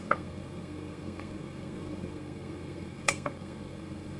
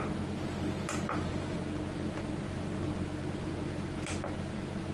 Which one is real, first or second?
second